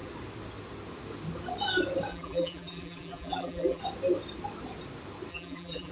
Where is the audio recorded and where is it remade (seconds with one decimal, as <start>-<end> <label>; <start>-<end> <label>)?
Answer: 0.0-2.1 recorded; 2.1-3.8 remade; 3.8-5.3 recorded; 5.3-5.9 remade